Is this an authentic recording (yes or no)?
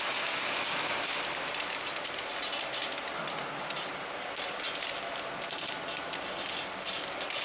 yes